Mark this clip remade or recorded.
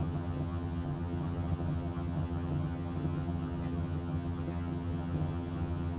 remade